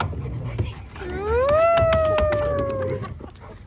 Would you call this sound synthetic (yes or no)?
no